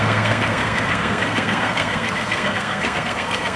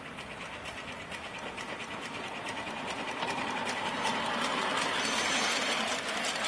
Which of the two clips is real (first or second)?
second